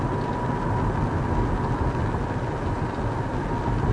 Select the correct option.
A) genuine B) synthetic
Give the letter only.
A